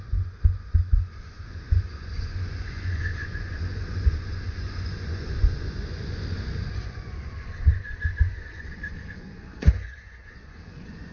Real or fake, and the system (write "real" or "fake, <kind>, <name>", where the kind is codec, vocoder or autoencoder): fake, vocoder, Vocos